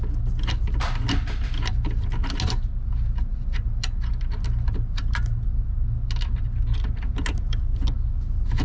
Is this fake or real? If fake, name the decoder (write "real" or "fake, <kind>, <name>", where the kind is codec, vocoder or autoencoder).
real